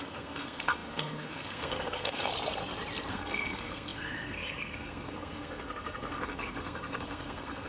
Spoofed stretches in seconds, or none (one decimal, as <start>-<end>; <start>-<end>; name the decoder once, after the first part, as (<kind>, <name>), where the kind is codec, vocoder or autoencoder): 0.0-2.3 (codec, SNAC); 3.1-7.7